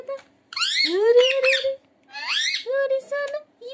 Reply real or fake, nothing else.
fake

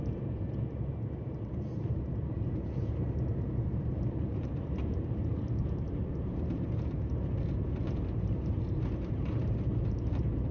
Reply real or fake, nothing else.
fake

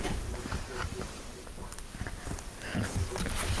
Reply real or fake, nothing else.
fake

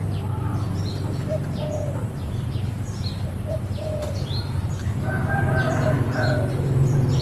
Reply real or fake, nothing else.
fake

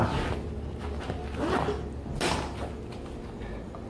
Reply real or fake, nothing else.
real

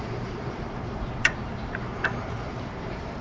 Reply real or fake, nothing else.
fake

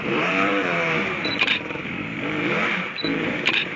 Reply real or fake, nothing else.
fake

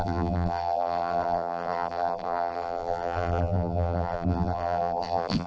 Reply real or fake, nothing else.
fake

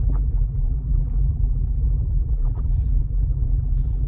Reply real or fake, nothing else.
fake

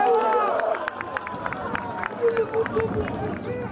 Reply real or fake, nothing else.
real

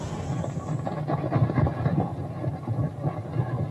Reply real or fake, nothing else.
real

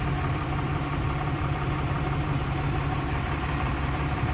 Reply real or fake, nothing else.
fake